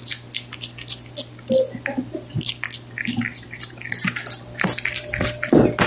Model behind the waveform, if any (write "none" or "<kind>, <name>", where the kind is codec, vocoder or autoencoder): none